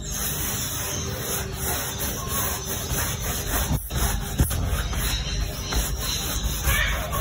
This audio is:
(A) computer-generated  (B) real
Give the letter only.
B